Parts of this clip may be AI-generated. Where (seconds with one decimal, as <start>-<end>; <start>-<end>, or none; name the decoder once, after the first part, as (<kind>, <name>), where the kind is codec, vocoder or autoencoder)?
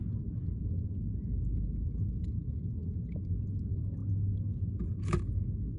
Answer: none